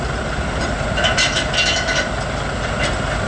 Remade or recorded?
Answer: recorded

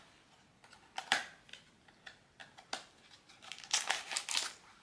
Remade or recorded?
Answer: recorded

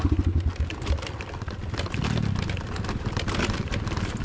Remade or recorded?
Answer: recorded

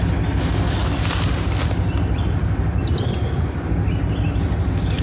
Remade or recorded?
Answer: recorded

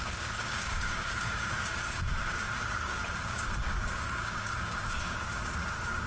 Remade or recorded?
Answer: remade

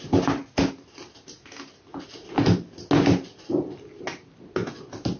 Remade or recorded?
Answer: recorded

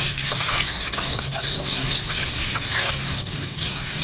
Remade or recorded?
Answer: remade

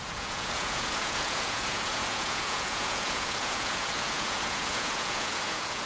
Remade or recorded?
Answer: remade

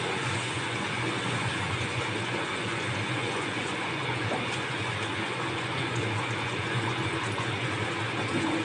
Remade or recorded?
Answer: remade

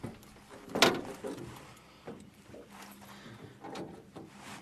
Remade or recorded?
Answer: recorded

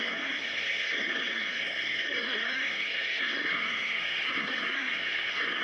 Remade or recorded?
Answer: remade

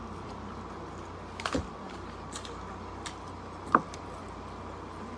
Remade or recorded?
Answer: recorded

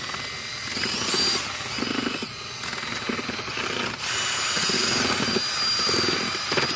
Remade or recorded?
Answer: recorded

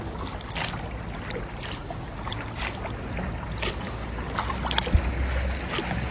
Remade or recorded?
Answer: recorded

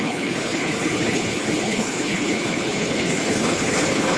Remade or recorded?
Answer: remade